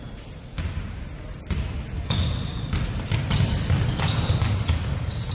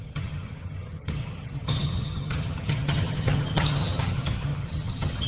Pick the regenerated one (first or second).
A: second